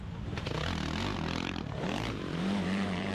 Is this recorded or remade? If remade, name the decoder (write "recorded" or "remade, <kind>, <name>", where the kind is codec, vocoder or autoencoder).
remade, vocoder, BigVGAN v2